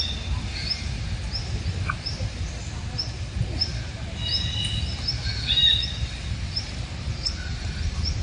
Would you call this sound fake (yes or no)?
no